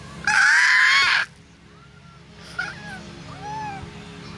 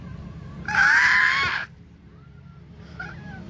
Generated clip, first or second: second